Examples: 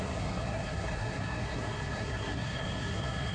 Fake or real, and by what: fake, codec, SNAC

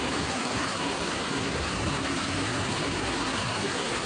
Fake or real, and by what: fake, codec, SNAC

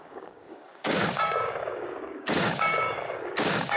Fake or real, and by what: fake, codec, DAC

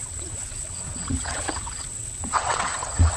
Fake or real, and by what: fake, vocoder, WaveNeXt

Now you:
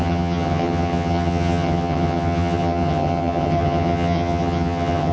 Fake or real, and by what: fake, vocoder, HiFi-GAN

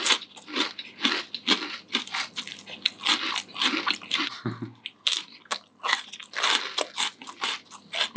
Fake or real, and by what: real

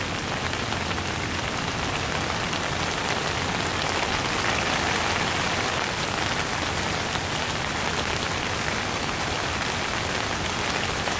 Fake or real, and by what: real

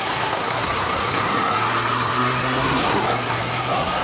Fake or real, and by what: fake, codec, SNAC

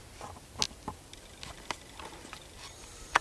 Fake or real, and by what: real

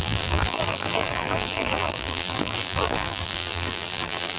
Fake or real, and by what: fake, vocoder, BigVGAN v2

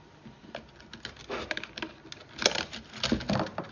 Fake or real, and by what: real